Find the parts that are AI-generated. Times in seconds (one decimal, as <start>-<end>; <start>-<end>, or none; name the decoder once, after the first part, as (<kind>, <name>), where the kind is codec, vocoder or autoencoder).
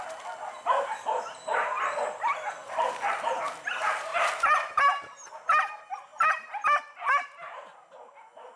4.1-4.7 (vocoder, BigVGAN v2)